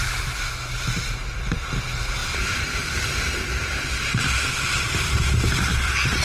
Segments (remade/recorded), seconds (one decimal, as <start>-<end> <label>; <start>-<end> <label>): 0.0-2.2 recorded; 2.2-6.2 remade